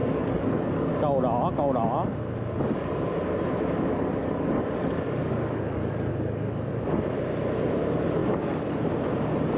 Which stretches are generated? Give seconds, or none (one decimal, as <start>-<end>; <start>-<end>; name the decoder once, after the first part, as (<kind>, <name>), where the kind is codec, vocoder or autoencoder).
0.0-0.9 (codec, DAC); 3.9-7.0; 8.2-8.8